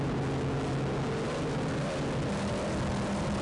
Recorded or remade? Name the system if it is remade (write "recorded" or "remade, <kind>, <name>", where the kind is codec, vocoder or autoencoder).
recorded